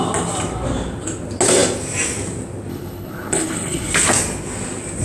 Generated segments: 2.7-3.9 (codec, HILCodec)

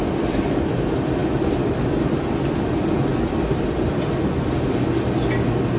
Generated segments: 3.1-4.7 (vocoder, BigVGAN v2)

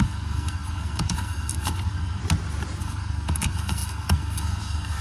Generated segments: 0.0-2.2 (codec, SNAC); 2.8-5.0

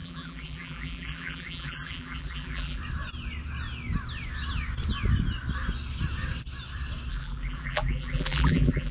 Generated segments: 0.0-2.8 (vocoder, BigVGAN v2); 7.1-8.9